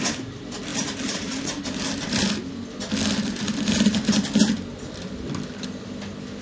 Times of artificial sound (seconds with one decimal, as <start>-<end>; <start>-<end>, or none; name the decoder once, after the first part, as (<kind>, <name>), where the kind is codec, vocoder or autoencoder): 0.7-1.4 (vocoder, BigVGAN v2)